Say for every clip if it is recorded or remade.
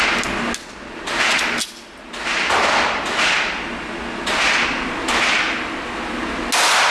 recorded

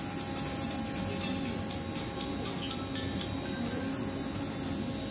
recorded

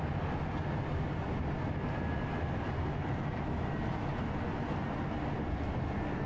recorded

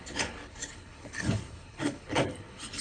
remade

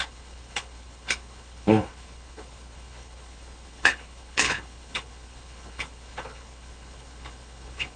remade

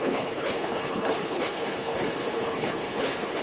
remade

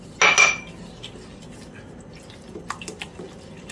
recorded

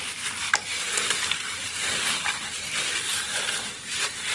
recorded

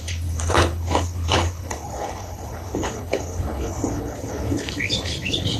remade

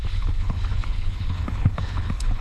remade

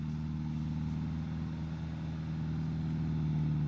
recorded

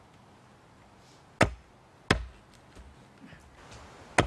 recorded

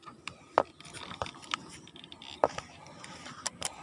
recorded